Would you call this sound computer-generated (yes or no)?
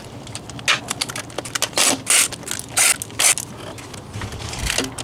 no